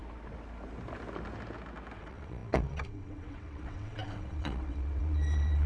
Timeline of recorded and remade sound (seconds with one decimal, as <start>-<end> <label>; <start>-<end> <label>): 0.0-2.0 recorded; 2.0-5.7 remade